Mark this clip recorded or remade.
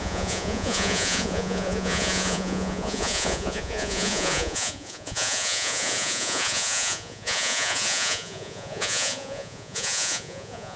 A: remade